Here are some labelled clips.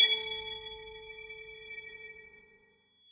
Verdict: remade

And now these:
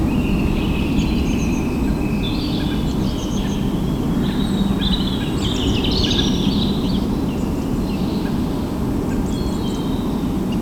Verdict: recorded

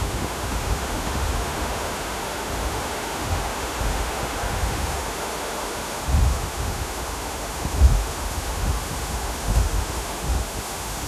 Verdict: remade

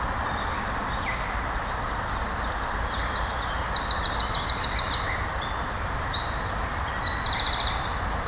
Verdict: recorded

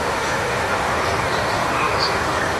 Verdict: remade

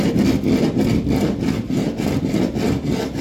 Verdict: recorded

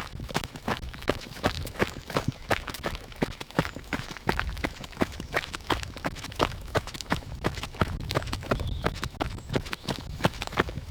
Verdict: remade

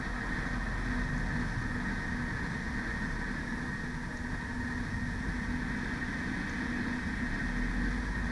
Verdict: recorded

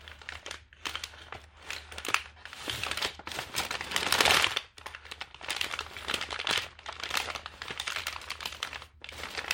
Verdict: recorded